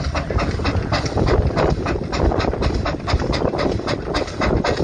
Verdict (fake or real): real